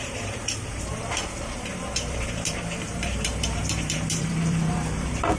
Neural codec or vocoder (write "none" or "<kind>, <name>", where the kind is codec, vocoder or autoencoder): vocoder, BigVGAN v2